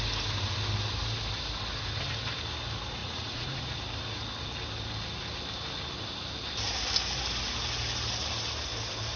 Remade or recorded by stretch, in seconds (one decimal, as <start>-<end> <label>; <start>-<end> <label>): 0.0-3.0 recorded; 3.0-3.6 remade; 3.6-9.2 recorded